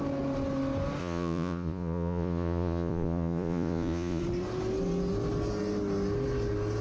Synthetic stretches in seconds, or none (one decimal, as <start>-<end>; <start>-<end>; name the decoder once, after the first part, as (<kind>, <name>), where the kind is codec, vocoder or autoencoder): 1.0-4.2 (vocoder, Vocos)

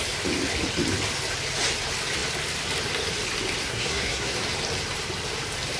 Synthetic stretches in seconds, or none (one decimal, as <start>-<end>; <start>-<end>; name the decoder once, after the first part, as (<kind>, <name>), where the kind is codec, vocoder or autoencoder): 3.6-4.4 (codec, SNAC)

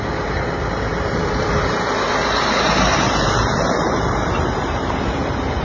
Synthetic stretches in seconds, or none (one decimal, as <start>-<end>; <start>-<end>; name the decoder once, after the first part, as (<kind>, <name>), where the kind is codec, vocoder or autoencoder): 0.0-5.6 (vocoder, BigVGAN v2)